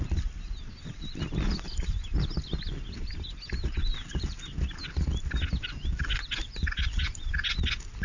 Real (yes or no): yes